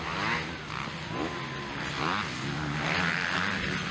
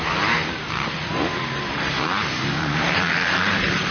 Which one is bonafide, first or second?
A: first